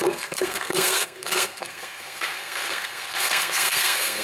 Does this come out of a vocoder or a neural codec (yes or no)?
yes